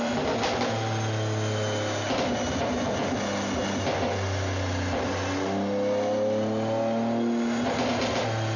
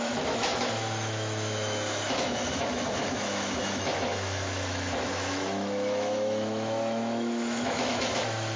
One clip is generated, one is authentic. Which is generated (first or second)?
second